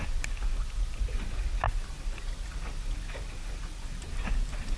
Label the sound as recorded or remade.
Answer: recorded